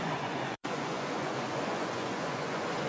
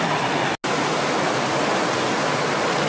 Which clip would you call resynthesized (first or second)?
first